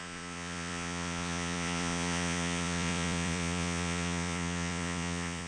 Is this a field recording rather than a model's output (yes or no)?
no